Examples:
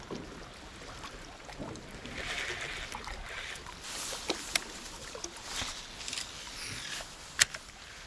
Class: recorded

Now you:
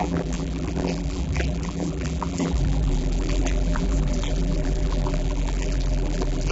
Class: remade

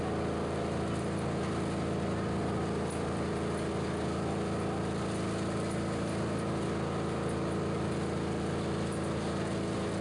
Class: recorded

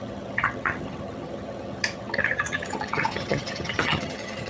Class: remade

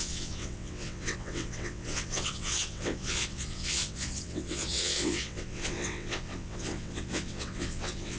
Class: remade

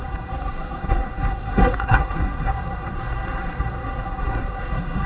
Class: remade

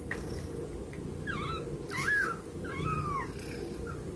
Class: recorded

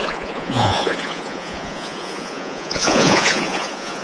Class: remade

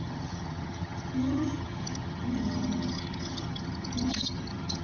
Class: remade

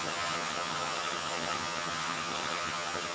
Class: remade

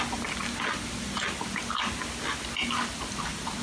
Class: recorded